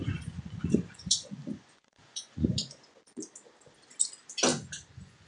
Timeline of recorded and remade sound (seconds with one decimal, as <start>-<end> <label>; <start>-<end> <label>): 0.0-3.2 remade; 3.2-4.5 recorded; 4.5-5.3 remade